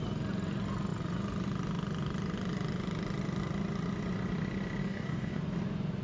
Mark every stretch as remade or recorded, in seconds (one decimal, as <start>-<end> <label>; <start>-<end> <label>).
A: 0.0-4.8 recorded; 4.8-5.4 remade; 5.4-6.0 recorded